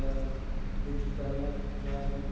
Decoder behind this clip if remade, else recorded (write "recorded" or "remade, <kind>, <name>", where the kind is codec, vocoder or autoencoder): recorded